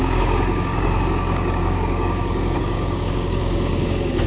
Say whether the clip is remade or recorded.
remade